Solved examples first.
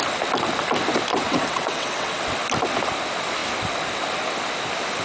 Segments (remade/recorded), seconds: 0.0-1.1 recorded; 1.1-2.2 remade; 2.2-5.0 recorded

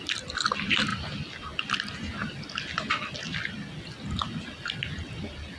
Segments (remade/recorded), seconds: 0.0-5.6 recorded

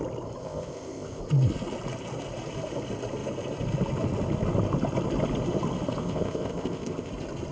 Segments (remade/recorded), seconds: 0.0-0.4 recorded; 0.4-1.2 remade; 1.2-6.0 recorded; 6.0-7.1 remade; 7.1-7.5 recorded